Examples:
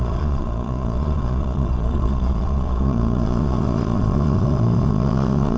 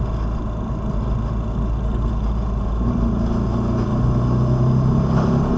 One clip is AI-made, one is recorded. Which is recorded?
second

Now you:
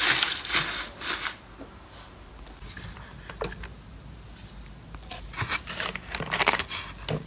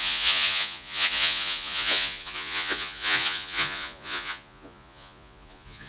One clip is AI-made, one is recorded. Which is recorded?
first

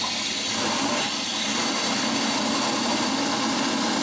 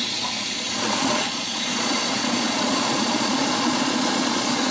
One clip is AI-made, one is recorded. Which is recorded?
first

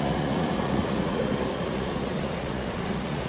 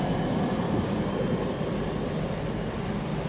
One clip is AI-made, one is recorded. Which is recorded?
second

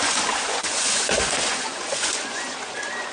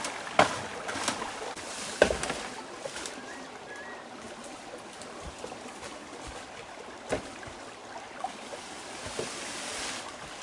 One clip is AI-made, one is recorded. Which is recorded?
second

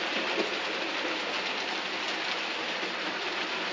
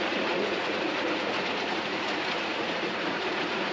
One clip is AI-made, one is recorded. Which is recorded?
first